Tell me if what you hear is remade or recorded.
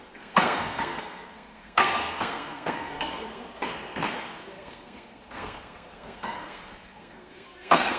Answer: remade